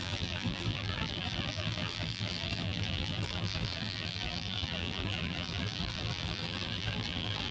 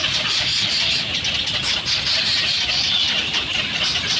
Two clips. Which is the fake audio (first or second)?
first